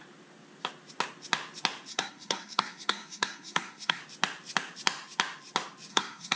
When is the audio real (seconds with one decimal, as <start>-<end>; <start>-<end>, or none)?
0.0-1.9; 4.0-5.9